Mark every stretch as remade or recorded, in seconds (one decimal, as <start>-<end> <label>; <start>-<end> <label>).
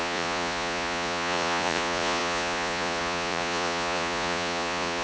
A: 0.0-5.0 remade